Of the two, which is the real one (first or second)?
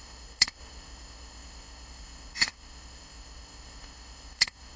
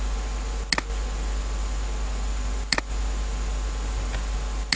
second